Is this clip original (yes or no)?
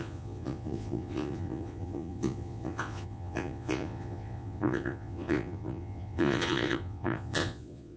no